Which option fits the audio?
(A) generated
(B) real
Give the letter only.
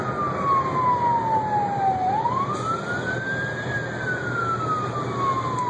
B